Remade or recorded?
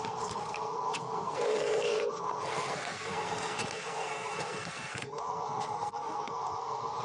remade